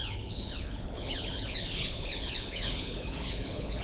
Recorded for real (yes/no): no